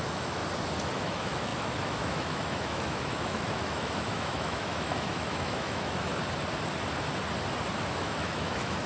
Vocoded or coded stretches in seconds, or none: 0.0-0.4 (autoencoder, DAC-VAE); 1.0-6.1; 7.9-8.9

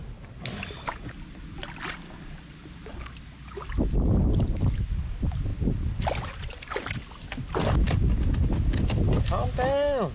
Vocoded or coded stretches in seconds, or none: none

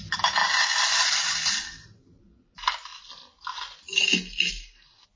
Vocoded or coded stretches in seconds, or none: none

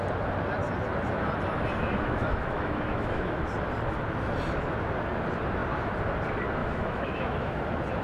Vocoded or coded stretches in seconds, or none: 1.8-3.4 (autoencoder, DAC-VAE); 6.6-7.6

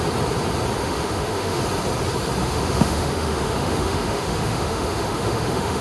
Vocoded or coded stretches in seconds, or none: 0.8-1.6 (autoencoder, DAC-VAE); 2.4-5.8

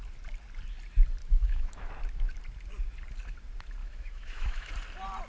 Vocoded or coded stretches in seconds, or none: 1.2-1.9 (autoencoder, DAC-VAE); 3.8-4.7

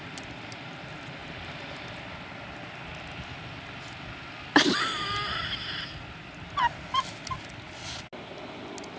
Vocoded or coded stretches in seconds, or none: none